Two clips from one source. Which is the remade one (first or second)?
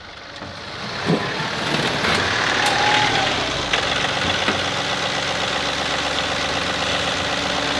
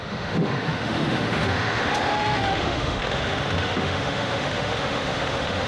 second